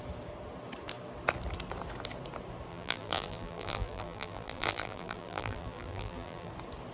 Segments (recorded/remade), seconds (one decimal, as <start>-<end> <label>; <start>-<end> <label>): 0.0-2.7 recorded; 2.7-6.5 remade; 6.5-6.9 recorded